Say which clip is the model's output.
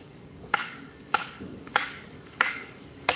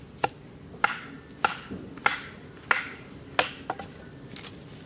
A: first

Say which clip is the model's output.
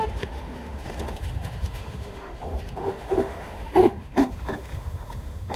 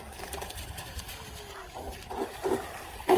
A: first